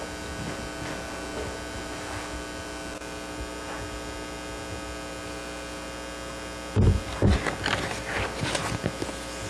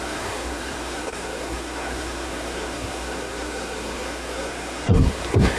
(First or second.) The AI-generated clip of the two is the second